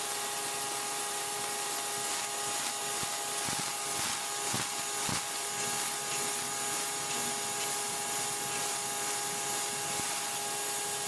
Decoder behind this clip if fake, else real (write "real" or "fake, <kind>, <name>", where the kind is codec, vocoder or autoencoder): real